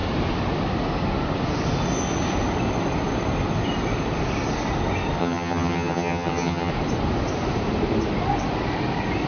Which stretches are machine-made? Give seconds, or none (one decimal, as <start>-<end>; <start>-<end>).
5.2-6.7